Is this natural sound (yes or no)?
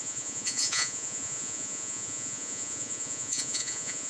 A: no